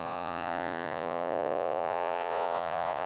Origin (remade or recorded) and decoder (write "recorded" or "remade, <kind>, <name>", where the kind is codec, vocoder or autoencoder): remade, vocoder, Vocos